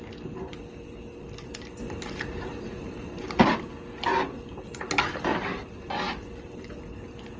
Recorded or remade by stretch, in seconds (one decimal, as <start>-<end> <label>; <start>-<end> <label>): 0.0-1.8 recorded; 1.8-3.4 remade; 3.4-5.3 recorded; 5.3-5.9 remade; 5.9-7.4 recorded

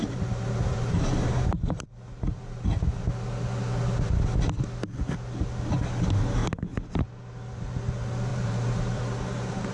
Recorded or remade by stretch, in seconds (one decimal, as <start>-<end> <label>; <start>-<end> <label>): 0.0-1.9 remade; 1.9-8.3 recorded; 8.3-9.7 remade